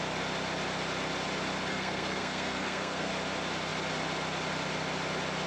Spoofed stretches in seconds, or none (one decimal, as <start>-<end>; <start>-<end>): 1.7-3.1